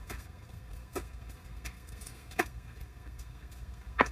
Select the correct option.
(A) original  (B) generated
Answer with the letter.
B